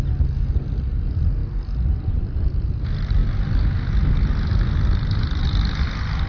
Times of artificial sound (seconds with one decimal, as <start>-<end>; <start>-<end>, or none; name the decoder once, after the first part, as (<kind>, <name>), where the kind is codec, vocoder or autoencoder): none